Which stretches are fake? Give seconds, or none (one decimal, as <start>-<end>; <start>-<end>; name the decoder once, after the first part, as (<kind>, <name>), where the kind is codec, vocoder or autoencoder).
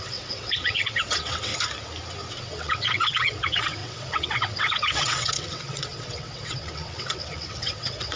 0.0-1.5 (vocoder, WaveNeXt); 2.3-8.2